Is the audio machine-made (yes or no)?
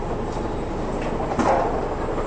no